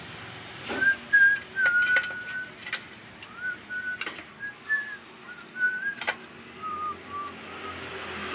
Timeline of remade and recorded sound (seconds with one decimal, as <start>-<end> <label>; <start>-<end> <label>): 0.0-8.3 recorded